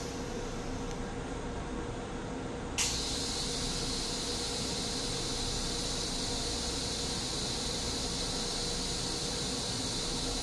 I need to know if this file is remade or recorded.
remade